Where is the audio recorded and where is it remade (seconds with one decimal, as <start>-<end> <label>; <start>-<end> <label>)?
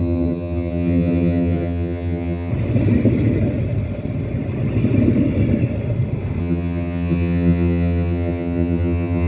0.0-2.5 remade; 2.5-6.4 recorded; 6.4-9.3 remade